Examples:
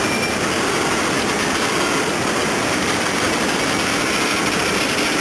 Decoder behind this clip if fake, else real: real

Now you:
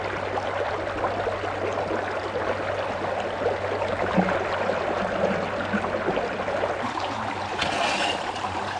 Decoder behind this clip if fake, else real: real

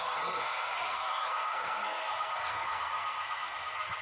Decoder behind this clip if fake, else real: fake, codec, SNAC